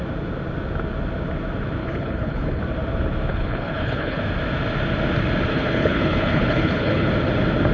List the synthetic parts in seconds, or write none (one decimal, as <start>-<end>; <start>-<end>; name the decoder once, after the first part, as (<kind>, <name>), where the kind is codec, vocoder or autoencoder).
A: 1.8-2.6 (codec, HILCodec); 3.3-4.2; 5.5-7.1